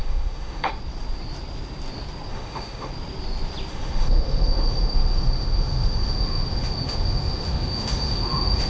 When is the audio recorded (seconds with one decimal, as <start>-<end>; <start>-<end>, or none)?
0.7-2.3; 2.9-3.7